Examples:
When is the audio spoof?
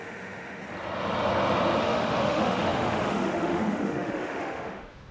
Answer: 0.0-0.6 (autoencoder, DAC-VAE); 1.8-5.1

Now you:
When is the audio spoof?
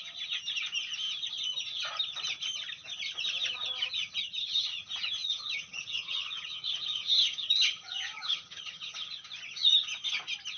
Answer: 4.2-4.8 (vocoder, HiFi-GAN); 5.2-9.1